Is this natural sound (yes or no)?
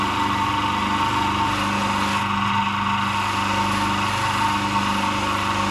yes